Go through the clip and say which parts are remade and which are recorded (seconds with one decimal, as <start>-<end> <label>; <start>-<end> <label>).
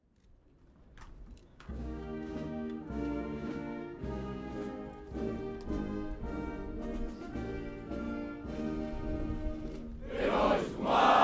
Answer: 0.0-1.4 recorded; 1.4-4.5 remade; 4.5-11.2 recorded